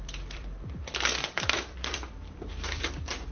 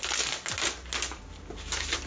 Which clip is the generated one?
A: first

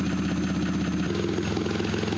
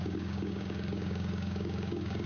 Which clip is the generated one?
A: second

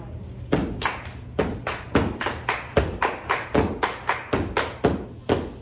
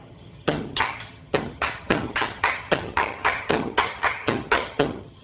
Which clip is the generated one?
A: second